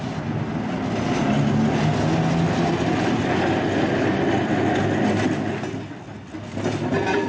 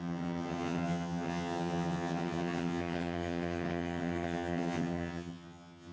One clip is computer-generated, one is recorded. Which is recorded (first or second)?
first